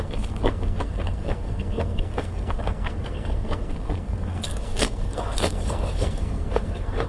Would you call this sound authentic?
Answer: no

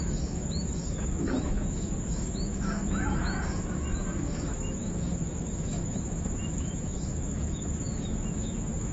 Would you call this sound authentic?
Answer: no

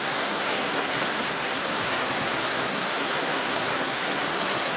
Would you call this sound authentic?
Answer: no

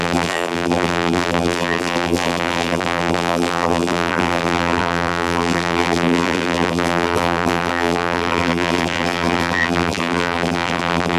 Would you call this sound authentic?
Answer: no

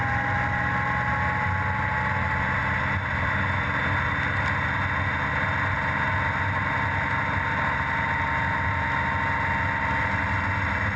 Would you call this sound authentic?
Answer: yes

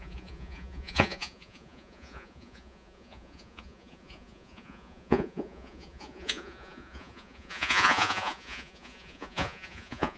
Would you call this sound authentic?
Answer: no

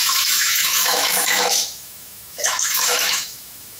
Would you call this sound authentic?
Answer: no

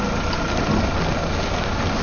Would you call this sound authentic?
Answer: yes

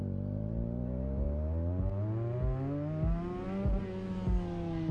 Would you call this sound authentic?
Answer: yes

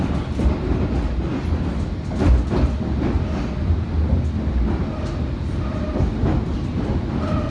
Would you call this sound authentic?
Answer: yes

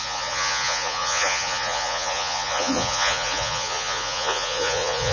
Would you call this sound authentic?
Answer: no